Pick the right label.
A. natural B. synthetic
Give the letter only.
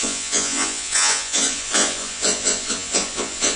B